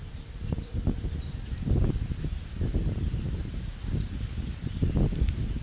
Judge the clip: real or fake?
real